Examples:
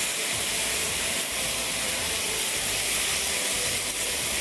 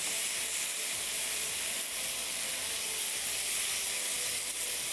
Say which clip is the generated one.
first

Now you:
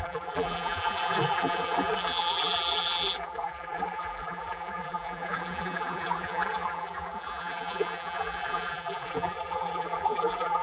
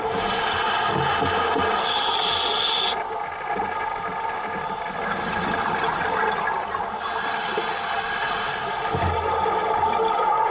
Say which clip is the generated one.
first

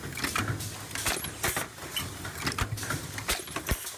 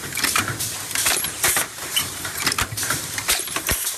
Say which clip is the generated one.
second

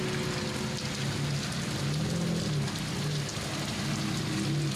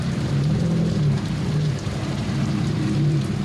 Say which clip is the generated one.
second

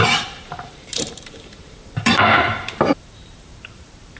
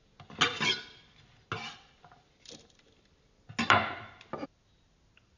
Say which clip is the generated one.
first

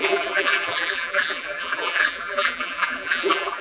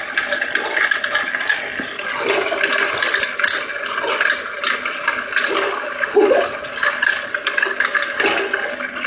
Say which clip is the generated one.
first